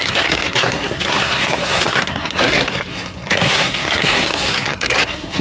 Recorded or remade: remade